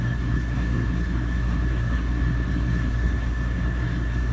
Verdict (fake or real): fake